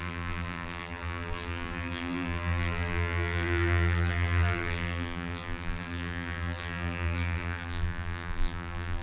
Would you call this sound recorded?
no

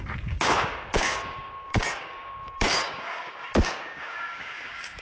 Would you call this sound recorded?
no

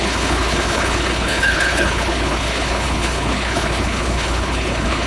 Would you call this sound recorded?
no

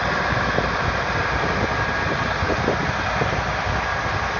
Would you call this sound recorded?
yes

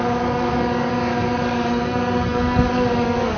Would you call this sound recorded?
no